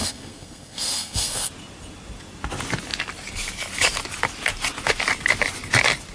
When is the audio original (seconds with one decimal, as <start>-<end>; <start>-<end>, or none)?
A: 1.5-6.1